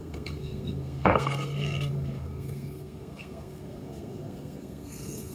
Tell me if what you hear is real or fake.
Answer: fake